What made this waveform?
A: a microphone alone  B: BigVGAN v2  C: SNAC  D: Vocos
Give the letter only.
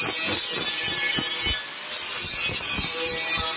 A